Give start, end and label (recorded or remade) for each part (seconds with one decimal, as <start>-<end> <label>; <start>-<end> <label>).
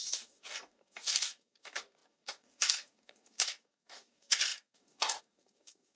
0.0-6.0 remade